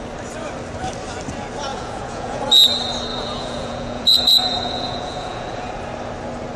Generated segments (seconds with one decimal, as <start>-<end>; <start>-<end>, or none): 1.7-2.4; 3.1-5.7